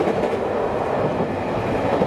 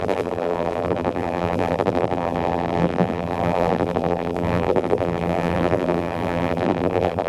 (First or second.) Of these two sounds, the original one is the first